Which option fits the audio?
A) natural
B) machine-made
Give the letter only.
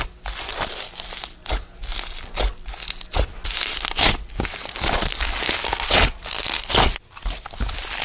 A